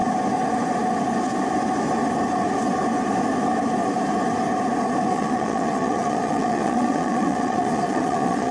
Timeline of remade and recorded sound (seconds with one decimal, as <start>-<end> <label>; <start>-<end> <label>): 0.0-5.1 recorded; 5.1-8.5 remade